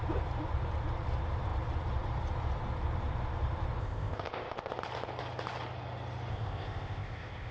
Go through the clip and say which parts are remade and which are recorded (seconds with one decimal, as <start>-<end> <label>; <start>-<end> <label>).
0.0-3.8 recorded; 3.8-4.7 remade; 4.7-6.3 recorded; 6.3-7.5 remade